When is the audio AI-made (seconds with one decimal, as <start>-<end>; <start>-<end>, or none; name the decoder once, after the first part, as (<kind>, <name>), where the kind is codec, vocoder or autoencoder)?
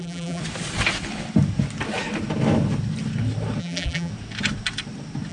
0.0-0.4 (vocoder, BigVGAN v2); 3.6-4.1